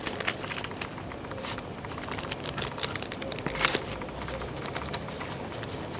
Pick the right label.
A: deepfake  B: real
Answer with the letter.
A